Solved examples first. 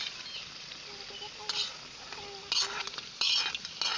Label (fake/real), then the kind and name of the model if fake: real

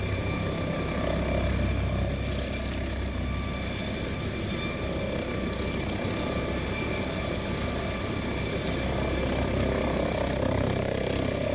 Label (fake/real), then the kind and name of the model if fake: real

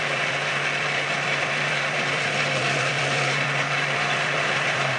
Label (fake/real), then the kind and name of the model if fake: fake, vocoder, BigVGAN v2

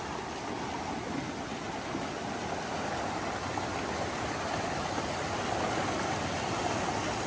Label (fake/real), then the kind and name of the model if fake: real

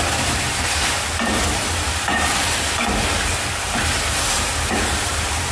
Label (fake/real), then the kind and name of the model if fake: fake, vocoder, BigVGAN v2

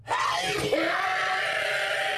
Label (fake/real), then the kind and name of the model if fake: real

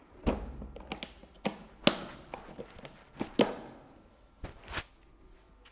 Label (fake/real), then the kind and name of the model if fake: real